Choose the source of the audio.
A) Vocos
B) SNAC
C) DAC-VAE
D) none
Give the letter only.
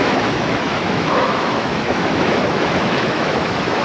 C